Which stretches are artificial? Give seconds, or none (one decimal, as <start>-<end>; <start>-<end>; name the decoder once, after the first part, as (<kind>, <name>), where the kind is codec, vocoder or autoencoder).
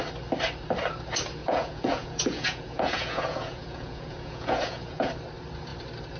1.4-5.1 (vocoder, Vocos)